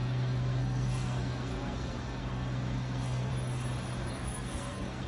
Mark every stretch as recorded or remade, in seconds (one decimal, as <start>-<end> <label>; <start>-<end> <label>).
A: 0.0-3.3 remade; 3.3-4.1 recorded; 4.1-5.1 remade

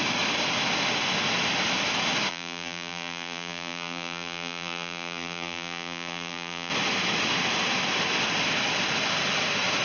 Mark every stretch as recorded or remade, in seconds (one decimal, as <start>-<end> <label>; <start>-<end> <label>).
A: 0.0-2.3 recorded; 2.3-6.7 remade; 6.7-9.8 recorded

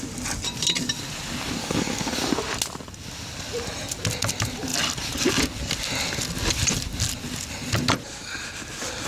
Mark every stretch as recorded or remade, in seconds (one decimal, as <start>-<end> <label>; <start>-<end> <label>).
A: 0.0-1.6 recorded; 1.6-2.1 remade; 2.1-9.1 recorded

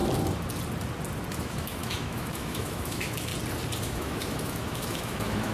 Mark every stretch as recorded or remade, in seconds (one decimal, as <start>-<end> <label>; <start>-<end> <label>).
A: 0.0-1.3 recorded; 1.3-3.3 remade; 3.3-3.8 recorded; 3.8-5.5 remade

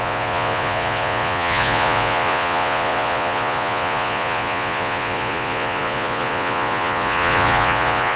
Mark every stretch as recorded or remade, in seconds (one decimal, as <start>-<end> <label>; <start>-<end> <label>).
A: 0.0-8.2 remade

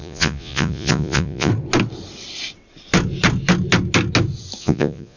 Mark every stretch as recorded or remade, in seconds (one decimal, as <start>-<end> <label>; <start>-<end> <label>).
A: 0.0-1.5 remade; 1.5-4.6 recorded; 4.6-5.2 remade